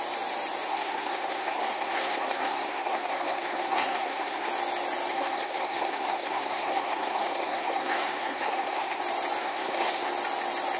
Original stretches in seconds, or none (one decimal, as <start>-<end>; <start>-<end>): 0.0-0.7; 4.5-5.1; 9.0-9.4; 10.1-10.8